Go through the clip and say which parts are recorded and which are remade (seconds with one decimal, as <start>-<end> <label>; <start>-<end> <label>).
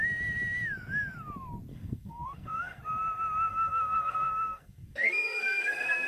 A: 0.0-1.7 recorded; 1.7-2.8 remade; 2.8-3.5 recorded; 3.5-6.1 remade